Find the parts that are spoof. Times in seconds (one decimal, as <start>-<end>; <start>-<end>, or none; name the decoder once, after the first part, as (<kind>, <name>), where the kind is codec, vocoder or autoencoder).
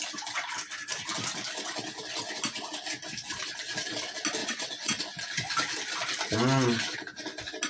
4.4-5.0 (vocoder, WaveNeXt)